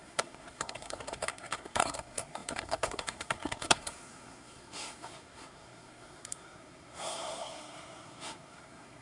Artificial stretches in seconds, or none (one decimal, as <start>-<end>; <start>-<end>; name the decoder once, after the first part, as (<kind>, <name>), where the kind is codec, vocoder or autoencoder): 0.0-9.0 (codec, SNAC)